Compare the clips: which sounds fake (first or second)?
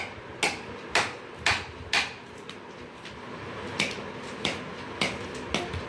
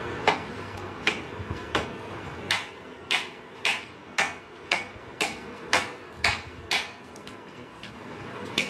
second